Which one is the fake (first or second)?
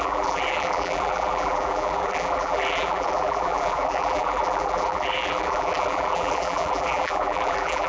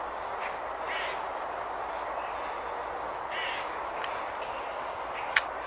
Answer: first